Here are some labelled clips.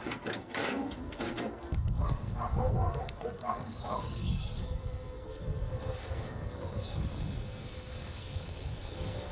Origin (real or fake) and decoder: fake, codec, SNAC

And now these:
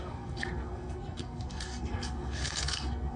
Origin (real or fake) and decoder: fake, codec, SNAC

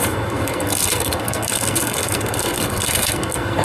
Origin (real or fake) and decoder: fake, codec, SNAC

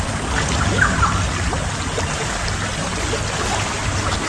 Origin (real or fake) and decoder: real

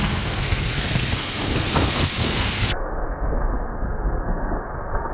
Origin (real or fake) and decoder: fake, codec, SNAC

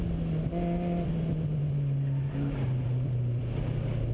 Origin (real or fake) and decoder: real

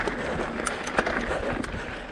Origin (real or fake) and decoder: real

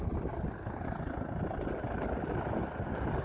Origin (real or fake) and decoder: real